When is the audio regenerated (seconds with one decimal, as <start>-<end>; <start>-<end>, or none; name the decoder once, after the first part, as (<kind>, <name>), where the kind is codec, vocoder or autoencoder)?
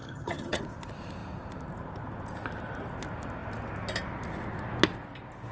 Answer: 0.0-0.6 (vocoder, HiFi-GAN)